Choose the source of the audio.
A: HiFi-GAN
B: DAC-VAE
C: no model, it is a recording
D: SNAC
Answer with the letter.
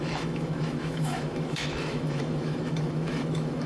B